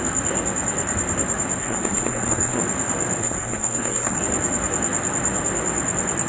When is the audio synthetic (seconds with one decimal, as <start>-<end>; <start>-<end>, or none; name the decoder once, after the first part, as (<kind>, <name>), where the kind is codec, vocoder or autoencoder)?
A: 1.6-2.6 (codec, SNAC); 3.2-4.2